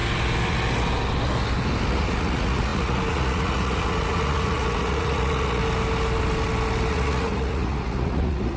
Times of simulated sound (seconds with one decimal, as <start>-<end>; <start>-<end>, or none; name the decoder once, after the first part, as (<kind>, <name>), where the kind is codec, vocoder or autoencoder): 1.9-5.6 (vocoder, Vocos); 6.9-8.6